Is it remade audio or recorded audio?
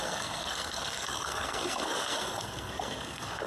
remade